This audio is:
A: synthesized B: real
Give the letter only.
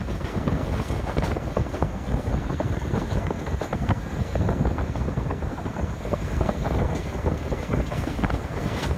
A